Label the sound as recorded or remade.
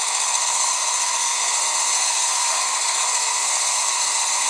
remade